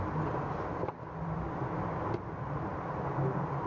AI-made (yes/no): no